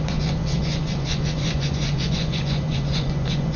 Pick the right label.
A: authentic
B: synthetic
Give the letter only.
B